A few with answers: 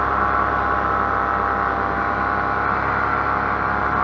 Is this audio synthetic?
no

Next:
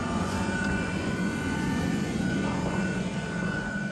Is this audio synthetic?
yes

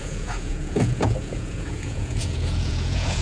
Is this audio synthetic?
yes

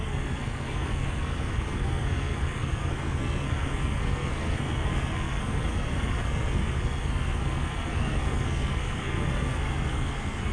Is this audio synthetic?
yes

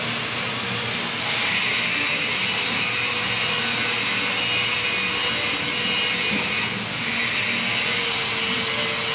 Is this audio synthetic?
no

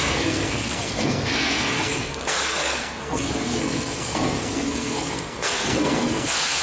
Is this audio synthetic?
yes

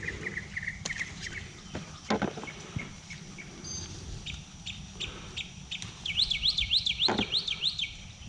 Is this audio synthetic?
no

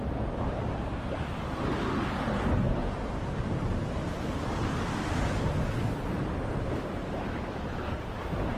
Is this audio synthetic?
no